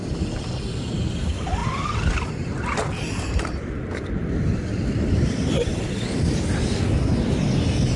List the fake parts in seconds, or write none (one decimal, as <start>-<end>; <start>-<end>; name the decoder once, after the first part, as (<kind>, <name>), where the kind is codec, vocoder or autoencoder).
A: 1.6-6.4 (vocoder, BigVGAN v2)